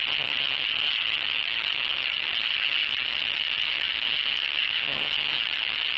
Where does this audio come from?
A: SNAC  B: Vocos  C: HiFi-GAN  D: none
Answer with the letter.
C